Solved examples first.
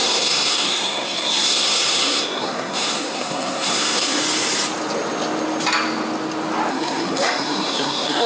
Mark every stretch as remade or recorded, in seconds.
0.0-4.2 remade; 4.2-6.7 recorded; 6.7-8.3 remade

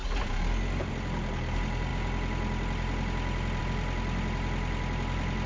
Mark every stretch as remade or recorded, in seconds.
0.0-5.5 recorded